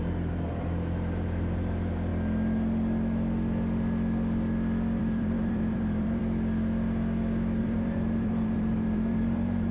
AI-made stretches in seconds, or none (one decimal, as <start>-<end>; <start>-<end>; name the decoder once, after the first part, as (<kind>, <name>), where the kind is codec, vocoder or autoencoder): 0.0-2.1 (vocoder, BigVGAN v2); 5.0-6.2; 7.6-9.7